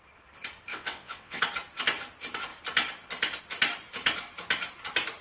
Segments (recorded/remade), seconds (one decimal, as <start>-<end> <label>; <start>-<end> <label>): 0.0-0.7 recorded; 0.7-1.4 remade; 1.4-5.2 recorded